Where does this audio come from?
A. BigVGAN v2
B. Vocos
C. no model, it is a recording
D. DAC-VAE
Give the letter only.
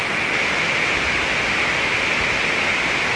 C